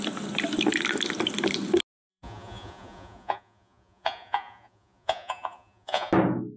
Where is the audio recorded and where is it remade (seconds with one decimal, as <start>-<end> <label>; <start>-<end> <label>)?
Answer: 0.0-2.1 recorded; 2.1-6.1 remade; 6.1-6.6 recorded